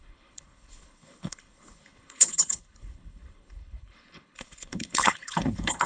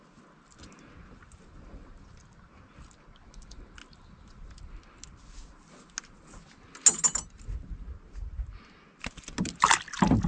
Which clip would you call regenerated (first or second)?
first